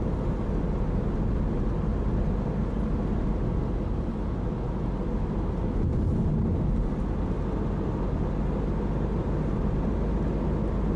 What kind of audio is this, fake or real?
real